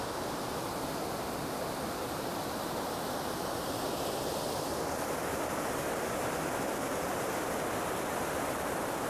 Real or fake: real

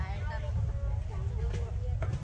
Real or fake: real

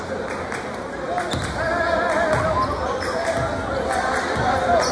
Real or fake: real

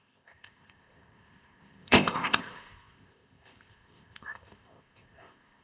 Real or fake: fake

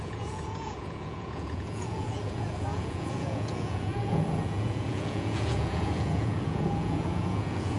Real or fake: fake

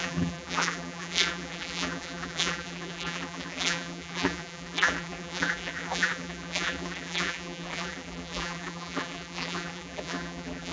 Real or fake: fake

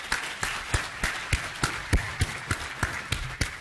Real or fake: real